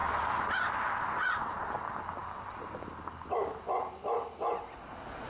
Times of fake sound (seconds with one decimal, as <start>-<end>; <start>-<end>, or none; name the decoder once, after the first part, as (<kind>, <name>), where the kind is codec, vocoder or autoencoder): none